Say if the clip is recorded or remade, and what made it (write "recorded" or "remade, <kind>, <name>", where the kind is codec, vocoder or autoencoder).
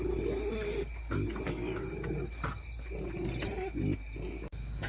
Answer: recorded